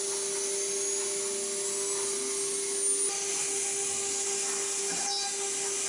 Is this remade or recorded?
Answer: recorded